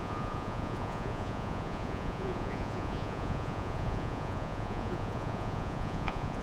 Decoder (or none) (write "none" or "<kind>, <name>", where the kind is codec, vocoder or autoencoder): vocoder, Vocos